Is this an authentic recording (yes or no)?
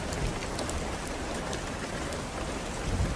yes